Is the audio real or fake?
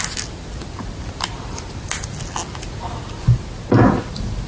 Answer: real